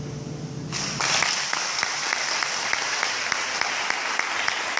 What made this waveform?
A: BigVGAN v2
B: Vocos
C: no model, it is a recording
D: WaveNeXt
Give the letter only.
C